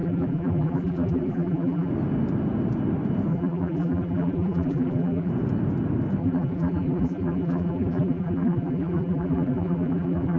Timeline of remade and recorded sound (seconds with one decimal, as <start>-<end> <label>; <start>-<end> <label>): 0.0-1.9 remade; 1.9-3.3 recorded; 3.3-5.3 remade; 5.3-6.2 recorded; 6.2-10.4 remade